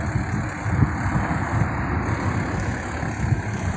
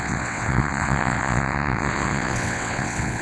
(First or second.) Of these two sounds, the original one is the first